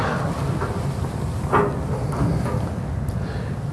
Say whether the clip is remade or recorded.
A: recorded